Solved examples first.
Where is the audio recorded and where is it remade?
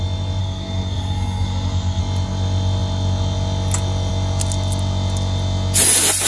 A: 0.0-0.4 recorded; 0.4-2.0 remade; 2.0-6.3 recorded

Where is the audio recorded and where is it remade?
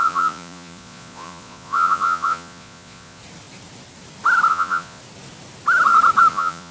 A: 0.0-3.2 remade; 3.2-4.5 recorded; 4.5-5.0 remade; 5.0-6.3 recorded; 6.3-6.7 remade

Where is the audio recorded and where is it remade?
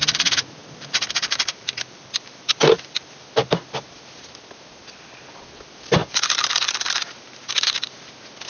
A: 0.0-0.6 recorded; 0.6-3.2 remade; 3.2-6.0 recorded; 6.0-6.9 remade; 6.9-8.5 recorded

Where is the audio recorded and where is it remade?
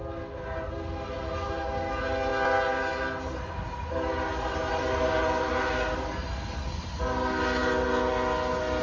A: 0.0-8.8 recorded